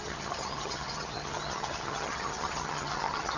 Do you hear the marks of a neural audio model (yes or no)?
yes